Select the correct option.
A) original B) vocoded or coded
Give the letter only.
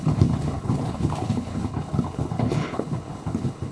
B